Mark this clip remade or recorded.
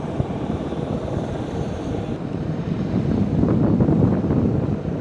recorded